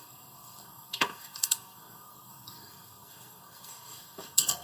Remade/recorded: remade